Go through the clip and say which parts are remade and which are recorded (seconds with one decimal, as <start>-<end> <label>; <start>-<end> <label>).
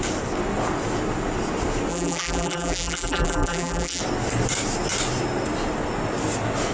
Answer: 0.0-1.9 recorded; 1.9-4.0 remade; 4.0-6.7 recorded